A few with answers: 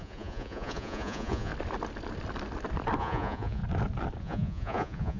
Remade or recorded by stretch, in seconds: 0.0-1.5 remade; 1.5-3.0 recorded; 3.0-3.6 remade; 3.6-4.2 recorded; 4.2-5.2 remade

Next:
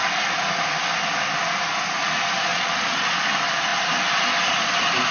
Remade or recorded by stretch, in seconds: 0.0-2.5 recorded; 2.5-3.3 remade; 3.3-5.1 recorded

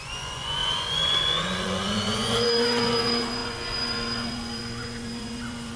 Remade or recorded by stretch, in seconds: 0.0-5.8 remade

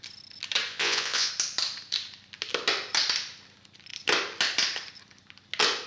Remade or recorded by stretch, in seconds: 0.0-0.7 recorded; 0.7-1.3 remade; 1.3-5.9 recorded